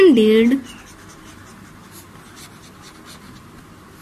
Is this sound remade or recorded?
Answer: recorded